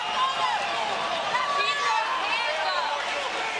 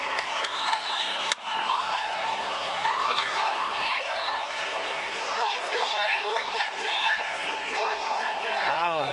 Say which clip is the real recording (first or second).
first